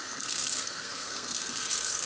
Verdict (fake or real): fake